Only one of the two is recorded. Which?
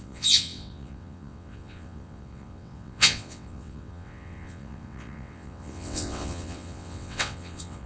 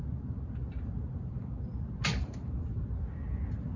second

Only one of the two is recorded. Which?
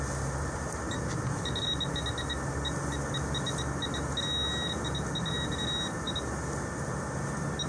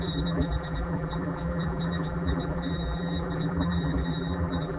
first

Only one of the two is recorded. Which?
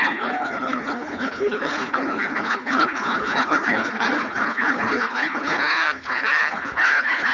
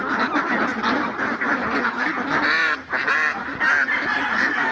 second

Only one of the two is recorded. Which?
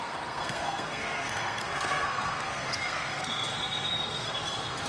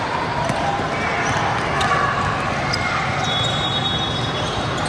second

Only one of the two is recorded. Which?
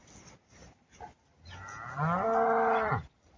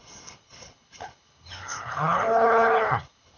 first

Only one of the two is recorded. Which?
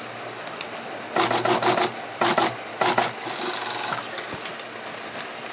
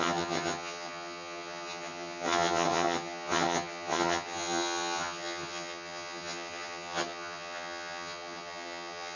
first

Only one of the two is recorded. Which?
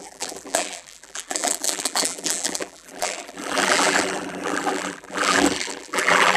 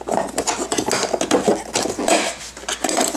second